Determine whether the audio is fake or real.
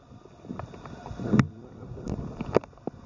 fake